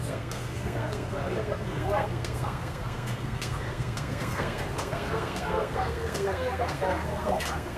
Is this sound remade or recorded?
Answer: remade